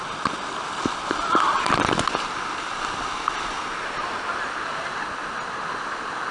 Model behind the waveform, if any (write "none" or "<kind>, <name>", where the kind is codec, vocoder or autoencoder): none